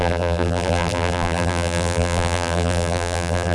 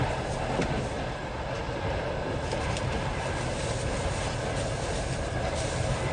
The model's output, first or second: first